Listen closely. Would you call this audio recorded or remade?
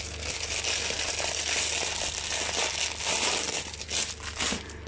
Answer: recorded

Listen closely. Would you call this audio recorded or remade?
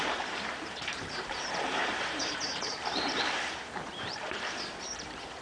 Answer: remade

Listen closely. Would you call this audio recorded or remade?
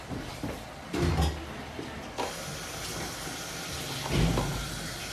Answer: recorded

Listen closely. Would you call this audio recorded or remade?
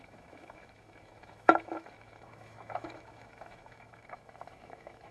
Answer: remade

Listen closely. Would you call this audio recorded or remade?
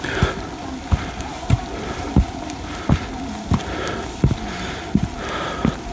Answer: recorded